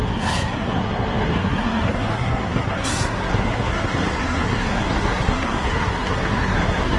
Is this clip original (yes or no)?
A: no